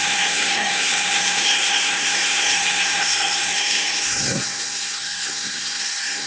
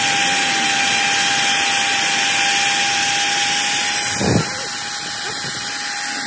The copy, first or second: first